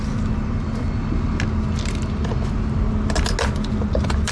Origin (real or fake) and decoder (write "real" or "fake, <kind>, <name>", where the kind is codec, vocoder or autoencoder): real